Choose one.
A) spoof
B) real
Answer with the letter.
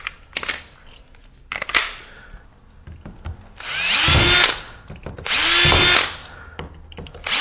B